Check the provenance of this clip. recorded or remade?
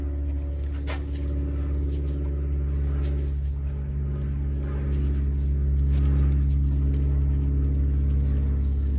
recorded